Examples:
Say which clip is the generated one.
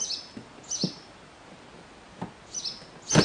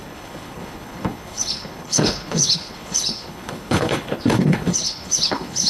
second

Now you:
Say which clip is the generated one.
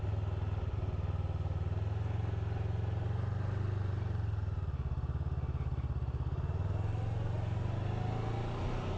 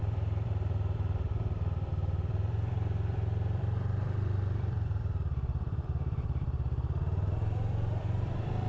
second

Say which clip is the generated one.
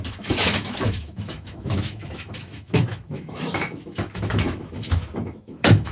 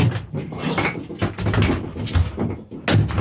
first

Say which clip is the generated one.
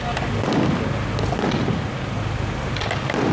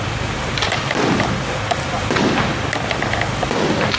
second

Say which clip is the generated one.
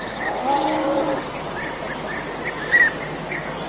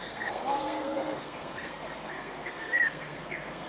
second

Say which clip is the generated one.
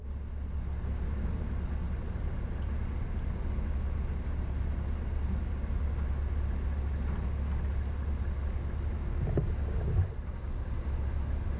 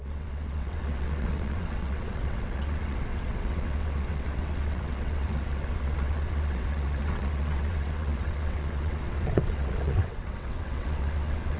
second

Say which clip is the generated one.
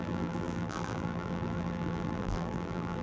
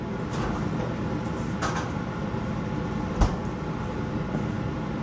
first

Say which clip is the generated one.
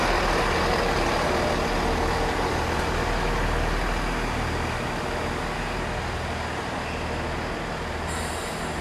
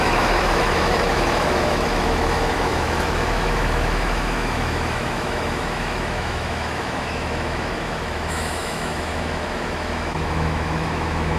second